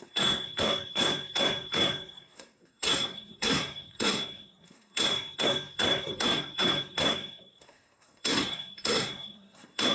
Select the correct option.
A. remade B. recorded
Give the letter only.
A